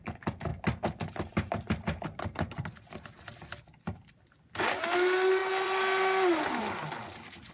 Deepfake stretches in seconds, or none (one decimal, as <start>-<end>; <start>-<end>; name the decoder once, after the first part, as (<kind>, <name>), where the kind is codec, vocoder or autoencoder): none